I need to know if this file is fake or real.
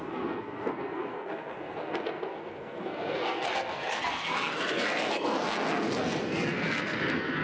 fake